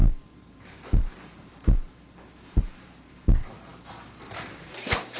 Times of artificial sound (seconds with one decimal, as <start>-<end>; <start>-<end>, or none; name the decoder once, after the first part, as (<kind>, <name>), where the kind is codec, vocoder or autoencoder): 0.0-5.2 (vocoder, BigVGAN v2)